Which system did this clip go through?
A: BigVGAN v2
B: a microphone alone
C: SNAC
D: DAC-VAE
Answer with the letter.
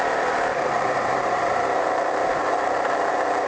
A